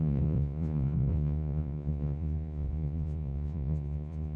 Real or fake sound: fake